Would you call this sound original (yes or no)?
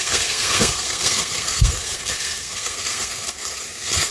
no